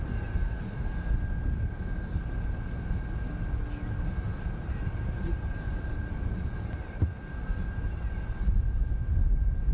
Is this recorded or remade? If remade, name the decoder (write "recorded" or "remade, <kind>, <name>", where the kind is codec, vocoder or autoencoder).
recorded